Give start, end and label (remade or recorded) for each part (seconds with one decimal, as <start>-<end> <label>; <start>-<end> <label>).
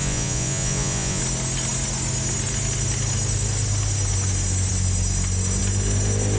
0.0-1.2 remade; 1.2-6.4 recorded